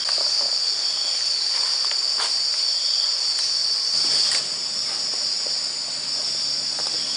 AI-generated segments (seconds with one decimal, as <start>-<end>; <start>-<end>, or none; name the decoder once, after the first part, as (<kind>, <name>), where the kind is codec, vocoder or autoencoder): 0.6-1.4 (vocoder, BigVGAN v2); 3.6-4.5